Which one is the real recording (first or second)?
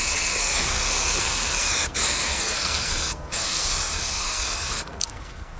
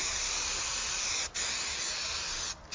second